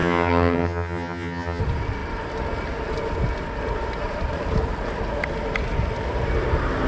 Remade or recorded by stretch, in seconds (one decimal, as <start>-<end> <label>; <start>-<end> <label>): 0.0-1.6 remade; 1.6-6.9 recorded